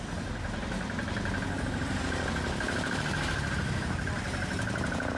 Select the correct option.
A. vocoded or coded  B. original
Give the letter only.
B